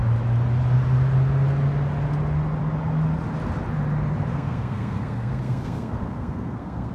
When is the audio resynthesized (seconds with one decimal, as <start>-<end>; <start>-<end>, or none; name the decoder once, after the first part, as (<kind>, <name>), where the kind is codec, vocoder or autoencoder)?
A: 4.3-6.9 (codec, SNAC)